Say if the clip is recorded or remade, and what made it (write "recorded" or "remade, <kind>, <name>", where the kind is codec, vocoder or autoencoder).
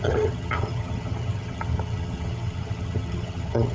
remade, vocoder, HiFi-GAN